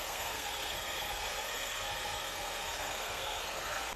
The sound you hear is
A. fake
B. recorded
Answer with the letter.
A